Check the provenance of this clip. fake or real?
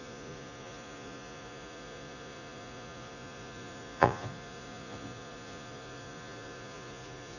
fake